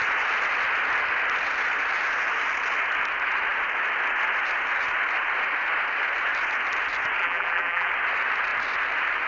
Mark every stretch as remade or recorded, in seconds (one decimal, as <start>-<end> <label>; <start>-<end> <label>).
0.0-7.2 recorded; 7.2-7.9 remade; 7.9-9.3 recorded